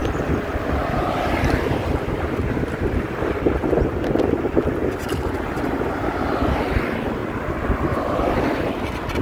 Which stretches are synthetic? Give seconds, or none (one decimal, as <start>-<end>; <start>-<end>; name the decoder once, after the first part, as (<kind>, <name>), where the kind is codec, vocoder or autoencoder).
5.0-7.2 (vocoder, BigVGAN v2); 7.8-9.2